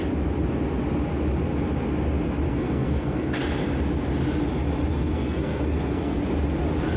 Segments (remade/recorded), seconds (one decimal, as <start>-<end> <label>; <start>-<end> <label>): 0.0-2.5 recorded; 2.5-3.5 remade; 3.5-4.9 recorded; 4.9-6.2 remade; 6.2-7.0 recorded